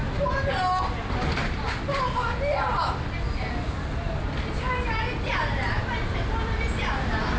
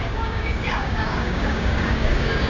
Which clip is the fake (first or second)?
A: second